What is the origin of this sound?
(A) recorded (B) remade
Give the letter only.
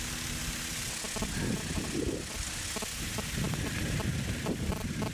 A